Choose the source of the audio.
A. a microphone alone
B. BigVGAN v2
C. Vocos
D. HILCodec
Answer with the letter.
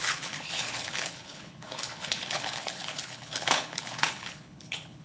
D